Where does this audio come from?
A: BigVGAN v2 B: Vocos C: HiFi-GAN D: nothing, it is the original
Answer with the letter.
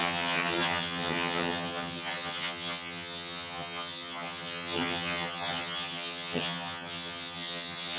C